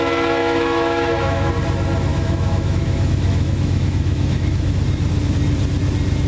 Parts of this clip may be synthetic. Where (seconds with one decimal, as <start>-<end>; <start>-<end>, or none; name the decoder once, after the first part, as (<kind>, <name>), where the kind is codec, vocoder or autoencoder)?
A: 0.4-1.5 (autoencoder, DAC-VAE); 2.1-4.7